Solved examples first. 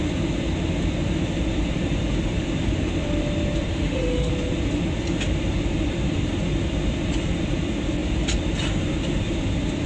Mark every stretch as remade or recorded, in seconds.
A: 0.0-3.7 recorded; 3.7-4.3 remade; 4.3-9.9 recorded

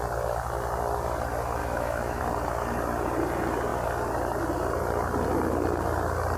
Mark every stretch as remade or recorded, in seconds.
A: 0.0-1.6 recorded; 1.6-2.2 remade; 2.2-6.4 recorded

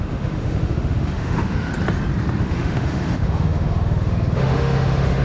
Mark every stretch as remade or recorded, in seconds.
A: 0.0-1.7 remade; 1.7-2.4 recorded; 2.4-5.2 remade